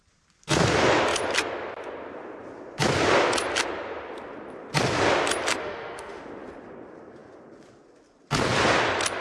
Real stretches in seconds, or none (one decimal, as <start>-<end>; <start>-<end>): 0.0-5.6; 6.2-9.2